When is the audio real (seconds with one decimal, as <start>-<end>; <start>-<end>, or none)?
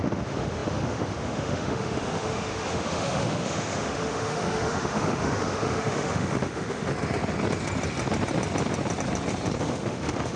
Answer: 6.9-9.6